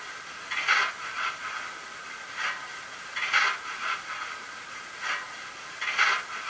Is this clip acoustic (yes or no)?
yes